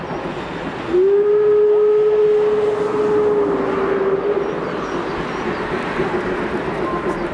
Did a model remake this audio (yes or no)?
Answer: no